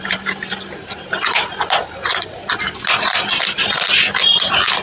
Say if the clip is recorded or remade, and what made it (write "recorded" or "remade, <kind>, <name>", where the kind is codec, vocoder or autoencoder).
recorded